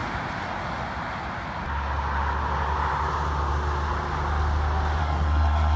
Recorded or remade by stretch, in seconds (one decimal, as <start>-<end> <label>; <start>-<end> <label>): 0.0-5.0 recorded; 5.0-5.8 remade

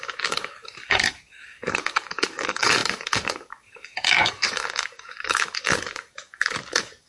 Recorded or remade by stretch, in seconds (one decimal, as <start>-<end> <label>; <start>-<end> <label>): 0.0-7.1 remade

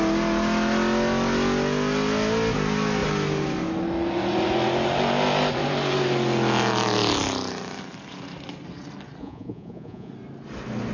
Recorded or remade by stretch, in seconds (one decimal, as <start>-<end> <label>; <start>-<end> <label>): 0.0-9.2 recorded; 9.2-10.1 remade; 10.1-10.9 recorded

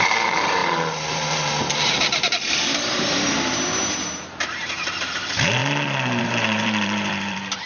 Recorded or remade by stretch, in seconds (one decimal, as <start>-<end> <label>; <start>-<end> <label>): 0.0-5.6 remade; 5.6-6.2 recorded; 6.2-7.7 remade